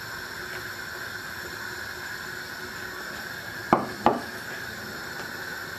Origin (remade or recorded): recorded